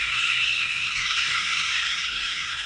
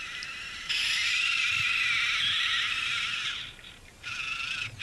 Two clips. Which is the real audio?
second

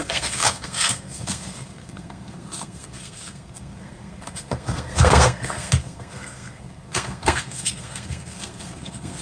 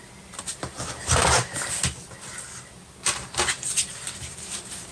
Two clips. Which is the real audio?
second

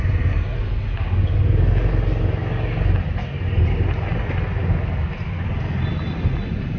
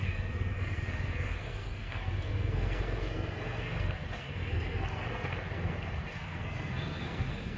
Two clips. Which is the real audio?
first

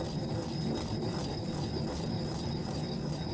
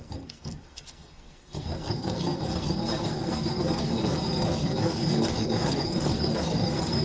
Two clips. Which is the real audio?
first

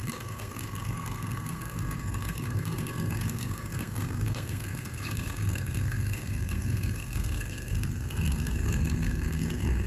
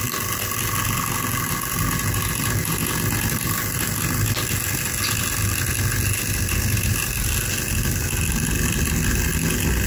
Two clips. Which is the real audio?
second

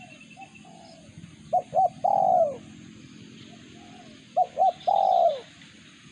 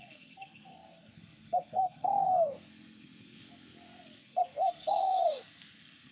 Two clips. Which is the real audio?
first